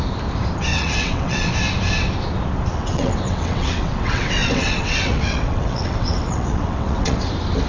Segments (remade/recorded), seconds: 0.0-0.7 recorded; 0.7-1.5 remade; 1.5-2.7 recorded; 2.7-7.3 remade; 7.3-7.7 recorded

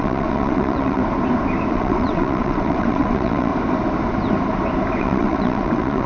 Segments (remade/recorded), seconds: 0.0-1.0 remade; 1.0-1.7 recorded; 1.7-3.5 remade; 3.5-5.0 recorded; 5.0-6.1 remade

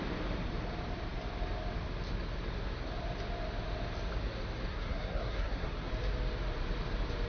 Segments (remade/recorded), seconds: 0.0-4.7 recorded; 4.7-5.9 remade; 5.9-7.3 recorded

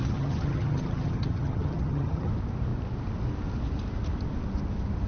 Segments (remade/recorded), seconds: 0.0-2.3 remade; 2.3-5.1 recorded

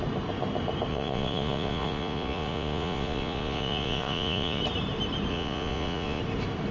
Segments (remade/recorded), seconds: 0.0-0.9 recorded; 0.9-4.6 remade; 4.6-5.3 recorded; 5.3-6.2 remade; 6.2-6.7 recorded

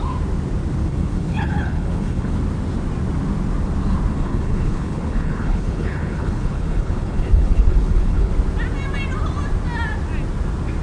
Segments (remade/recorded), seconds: 0.0-0.8 recorded; 0.8-2.4 remade; 2.4-4.1 recorded; 4.1-8.3 remade; 8.3-10.8 recorded

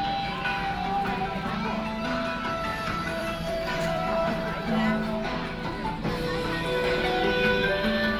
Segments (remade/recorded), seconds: 0.0-2.7 recorded; 2.7-4.7 remade; 4.7-8.2 recorded